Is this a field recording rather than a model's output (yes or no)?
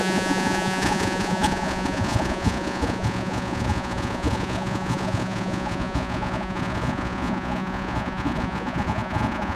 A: no